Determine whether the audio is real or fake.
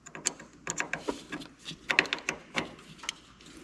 real